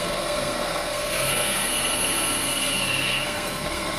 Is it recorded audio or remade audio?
remade